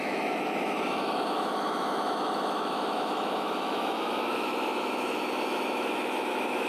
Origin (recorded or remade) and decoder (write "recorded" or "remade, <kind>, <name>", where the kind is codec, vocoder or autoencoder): remade, autoencoder, DAC-VAE